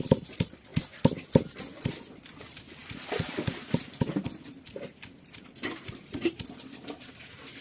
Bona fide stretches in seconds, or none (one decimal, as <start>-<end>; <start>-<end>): 0.7-2.0